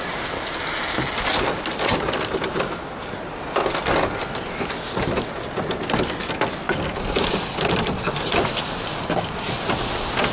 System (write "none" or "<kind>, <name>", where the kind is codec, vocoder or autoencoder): none